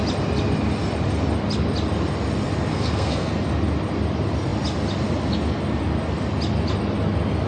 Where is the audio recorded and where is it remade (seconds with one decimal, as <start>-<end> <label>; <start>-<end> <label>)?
0.0-2.7 recorded; 2.7-3.3 remade; 3.3-7.5 recorded